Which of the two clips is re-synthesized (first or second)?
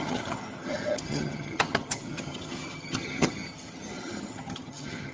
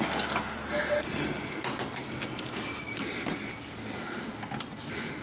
first